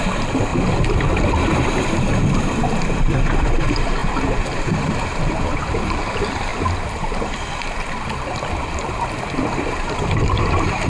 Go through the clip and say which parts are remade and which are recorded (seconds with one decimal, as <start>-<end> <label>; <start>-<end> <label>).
0.0-0.5 remade; 0.5-1.3 recorded; 1.3-10.9 remade

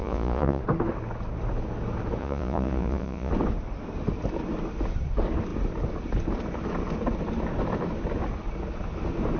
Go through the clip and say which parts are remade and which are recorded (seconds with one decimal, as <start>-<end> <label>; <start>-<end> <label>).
0.0-0.6 remade; 0.6-2.2 recorded; 2.2-3.3 remade; 3.3-9.4 recorded

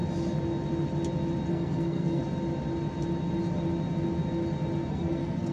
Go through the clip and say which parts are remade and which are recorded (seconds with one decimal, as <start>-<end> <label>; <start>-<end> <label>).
0.0-1.5 recorded; 1.5-2.2 remade; 2.2-4.9 recorded; 4.9-5.5 remade

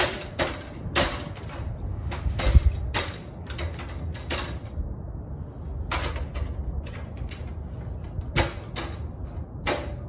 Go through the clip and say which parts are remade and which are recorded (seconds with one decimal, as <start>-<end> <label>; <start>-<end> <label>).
0.0-1.9 recorded; 1.9-2.4 remade; 2.4-10.1 recorded

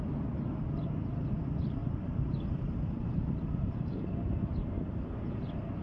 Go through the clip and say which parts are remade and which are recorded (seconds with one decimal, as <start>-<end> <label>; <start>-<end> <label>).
0.0-1.8 recorded; 1.8-4.4 remade; 4.4-5.8 recorded

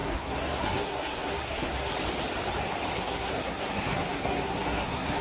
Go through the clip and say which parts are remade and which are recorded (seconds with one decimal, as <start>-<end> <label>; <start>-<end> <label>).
0.0-1.9 remade; 1.9-2.9 recorded; 2.9-5.2 remade

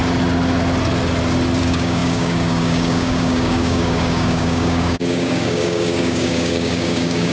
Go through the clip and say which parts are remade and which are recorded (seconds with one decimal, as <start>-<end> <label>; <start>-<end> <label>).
0.0-1.6 recorded; 1.6-7.3 remade